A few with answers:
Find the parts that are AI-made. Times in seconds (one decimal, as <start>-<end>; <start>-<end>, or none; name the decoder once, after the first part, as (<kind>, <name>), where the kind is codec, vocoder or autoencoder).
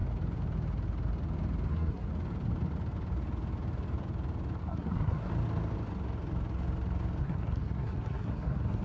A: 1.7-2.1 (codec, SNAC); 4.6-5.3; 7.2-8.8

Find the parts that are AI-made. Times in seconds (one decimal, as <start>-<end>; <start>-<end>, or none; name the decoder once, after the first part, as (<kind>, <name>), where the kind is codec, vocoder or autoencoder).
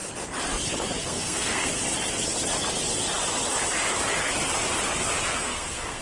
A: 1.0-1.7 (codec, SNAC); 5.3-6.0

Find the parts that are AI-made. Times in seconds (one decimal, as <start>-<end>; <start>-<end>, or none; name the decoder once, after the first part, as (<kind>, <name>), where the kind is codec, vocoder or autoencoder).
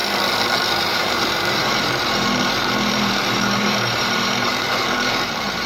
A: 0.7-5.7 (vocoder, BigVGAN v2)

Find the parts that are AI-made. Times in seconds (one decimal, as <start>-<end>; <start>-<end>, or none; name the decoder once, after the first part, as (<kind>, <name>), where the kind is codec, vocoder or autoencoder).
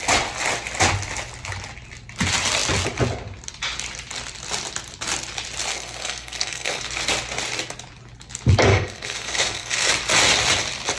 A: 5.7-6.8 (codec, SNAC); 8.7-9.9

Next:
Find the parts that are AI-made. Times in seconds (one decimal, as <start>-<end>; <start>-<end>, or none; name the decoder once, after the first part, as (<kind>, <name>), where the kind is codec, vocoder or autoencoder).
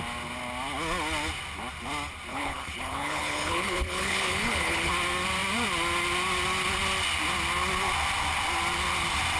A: 2.3-4.9 (codec, HILCodec)